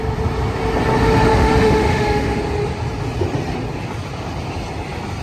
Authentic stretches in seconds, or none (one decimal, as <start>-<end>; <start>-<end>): 0.0-1.3; 2.4-5.2